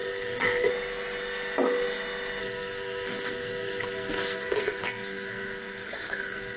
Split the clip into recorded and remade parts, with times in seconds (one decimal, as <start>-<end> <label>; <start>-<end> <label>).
0.0-0.7 remade; 0.7-2.4 recorded; 2.4-6.6 remade